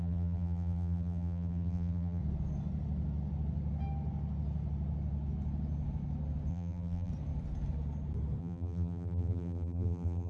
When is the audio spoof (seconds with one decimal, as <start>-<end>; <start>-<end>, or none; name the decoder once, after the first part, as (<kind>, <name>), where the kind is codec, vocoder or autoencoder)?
0.0-2.2 (vocoder, BigVGAN v2); 6.5-7.1; 8.4-10.3